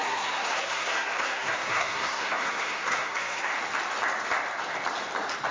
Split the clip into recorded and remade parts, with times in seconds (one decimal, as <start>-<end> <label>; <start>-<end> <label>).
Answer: 0.0-3.5 remade; 3.5-5.5 recorded